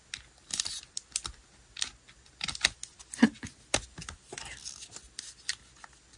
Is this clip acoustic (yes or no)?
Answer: yes